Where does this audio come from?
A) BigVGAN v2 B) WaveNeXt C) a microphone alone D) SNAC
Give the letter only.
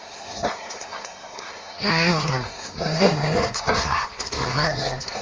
D